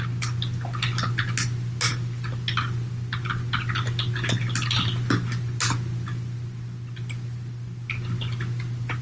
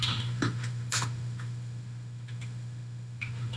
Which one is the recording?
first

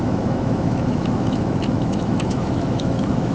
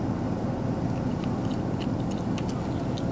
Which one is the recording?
second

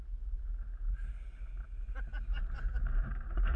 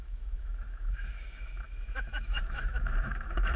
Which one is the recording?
first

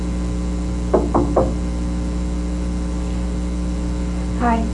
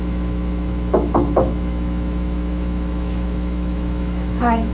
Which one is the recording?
first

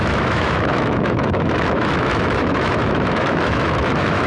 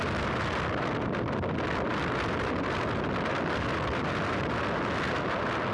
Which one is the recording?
second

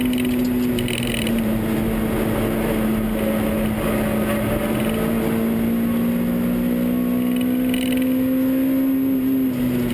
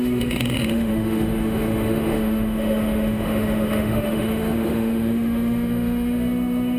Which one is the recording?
first